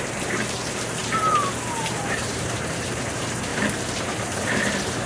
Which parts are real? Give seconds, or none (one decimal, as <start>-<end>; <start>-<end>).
none